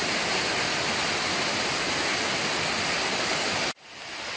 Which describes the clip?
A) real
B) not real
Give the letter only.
A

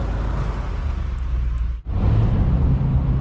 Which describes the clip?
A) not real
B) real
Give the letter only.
B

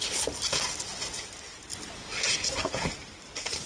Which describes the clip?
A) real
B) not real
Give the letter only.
A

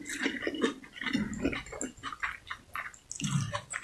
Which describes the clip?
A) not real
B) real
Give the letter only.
B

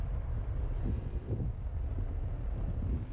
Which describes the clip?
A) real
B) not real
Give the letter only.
A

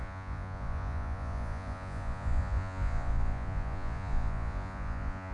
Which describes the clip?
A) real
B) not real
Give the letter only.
B